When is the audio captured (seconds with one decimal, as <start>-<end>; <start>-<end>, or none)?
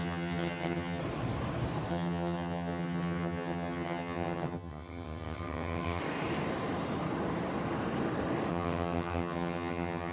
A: 1.0-1.9; 6.0-8.5